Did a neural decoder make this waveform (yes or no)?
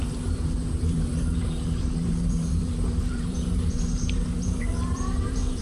yes